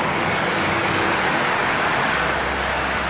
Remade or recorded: remade